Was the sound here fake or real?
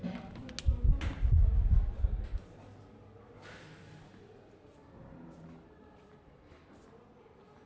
real